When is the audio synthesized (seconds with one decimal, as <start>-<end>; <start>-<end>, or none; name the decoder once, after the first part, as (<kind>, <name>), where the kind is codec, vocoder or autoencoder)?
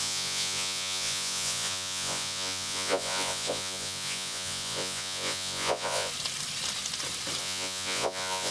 0.0-6.1 (vocoder, Vocos); 7.4-8.5